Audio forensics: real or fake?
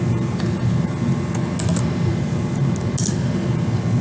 real